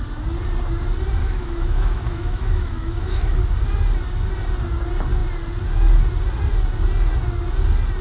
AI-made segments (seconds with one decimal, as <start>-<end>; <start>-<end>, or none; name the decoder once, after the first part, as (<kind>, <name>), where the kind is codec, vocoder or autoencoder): 1.2-3.4 (autoencoder, DAC-VAE)